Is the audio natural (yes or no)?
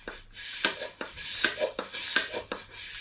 yes